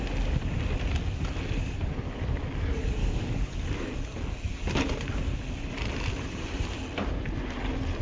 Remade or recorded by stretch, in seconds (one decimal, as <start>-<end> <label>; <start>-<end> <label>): 0.0-3.0 recorded; 3.0-3.6 remade; 3.6-8.0 recorded